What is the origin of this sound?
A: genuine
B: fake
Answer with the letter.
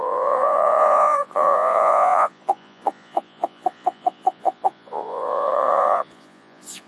B